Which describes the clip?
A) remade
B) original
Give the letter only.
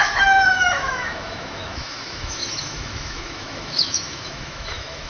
A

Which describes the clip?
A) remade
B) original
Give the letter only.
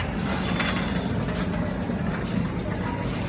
B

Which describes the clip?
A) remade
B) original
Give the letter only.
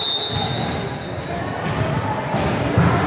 B